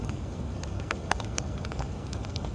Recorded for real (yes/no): no